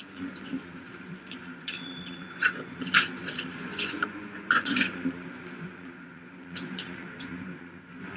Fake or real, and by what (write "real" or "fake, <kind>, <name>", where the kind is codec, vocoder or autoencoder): fake, vocoder, Vocos